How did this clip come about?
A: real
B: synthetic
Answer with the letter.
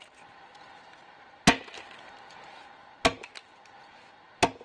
A